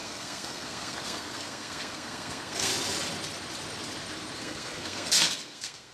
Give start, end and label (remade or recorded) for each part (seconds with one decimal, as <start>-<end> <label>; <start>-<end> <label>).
0.0-2.7 remade; 2.7-4.4 recorded; 4.4-5.9 remade